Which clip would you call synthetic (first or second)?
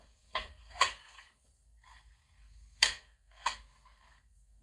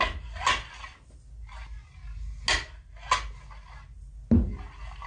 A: first